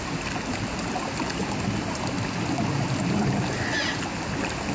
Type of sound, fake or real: real